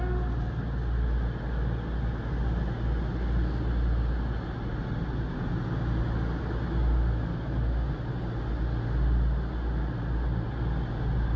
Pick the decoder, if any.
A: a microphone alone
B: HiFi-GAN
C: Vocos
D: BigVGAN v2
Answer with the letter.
A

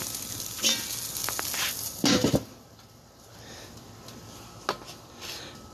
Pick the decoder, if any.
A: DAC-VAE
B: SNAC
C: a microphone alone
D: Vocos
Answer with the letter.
C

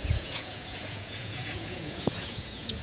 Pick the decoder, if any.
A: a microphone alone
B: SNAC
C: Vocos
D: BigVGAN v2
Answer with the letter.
C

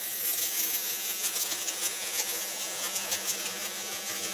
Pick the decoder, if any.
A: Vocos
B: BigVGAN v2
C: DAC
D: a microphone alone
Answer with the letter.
A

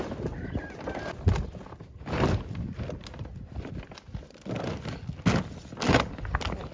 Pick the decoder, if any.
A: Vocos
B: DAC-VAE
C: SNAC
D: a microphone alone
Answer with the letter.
D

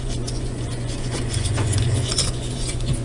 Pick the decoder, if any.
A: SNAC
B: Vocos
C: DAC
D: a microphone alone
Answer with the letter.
B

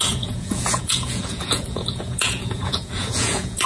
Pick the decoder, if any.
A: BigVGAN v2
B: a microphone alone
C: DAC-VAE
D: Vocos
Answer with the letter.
D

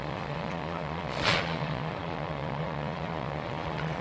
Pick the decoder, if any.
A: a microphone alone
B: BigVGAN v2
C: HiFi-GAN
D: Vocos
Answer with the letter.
D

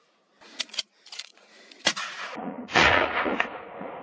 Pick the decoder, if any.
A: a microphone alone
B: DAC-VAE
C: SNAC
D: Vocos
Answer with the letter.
D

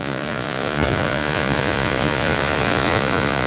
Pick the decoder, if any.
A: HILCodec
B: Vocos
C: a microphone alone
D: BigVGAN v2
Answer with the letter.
B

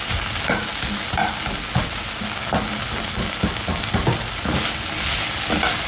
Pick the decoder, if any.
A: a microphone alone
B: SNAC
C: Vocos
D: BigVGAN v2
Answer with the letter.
A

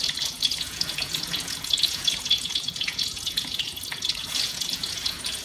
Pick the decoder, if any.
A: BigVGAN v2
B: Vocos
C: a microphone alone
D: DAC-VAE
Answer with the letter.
B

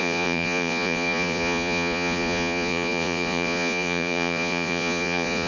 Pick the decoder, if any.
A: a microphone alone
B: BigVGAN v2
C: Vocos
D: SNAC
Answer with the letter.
C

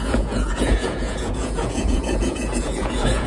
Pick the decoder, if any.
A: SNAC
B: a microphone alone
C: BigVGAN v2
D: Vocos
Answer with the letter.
D